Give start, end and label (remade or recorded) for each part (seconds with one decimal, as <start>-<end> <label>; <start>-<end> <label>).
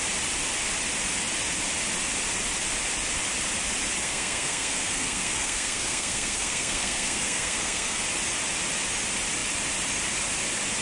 0.0-4.0 recorded; 4.0-8.0 remade; 8.0-10.8 recorded